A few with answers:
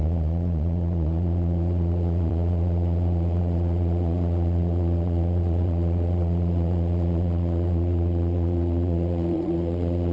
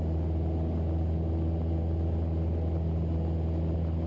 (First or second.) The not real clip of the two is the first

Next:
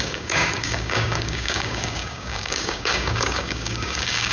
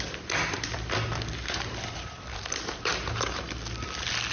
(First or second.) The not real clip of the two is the first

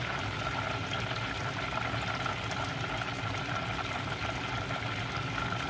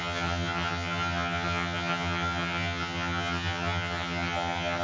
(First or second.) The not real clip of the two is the second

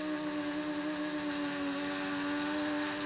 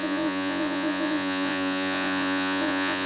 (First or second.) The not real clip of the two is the second